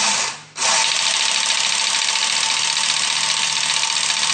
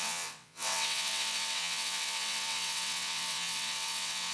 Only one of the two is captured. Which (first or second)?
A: first